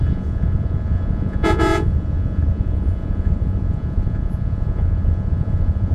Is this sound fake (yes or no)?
yes